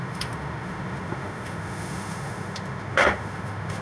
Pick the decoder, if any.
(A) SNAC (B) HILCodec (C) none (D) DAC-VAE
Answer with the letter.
D